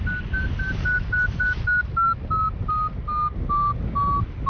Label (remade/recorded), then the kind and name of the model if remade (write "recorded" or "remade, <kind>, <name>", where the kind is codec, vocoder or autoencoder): recorded